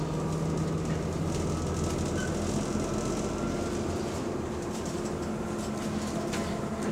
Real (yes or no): yes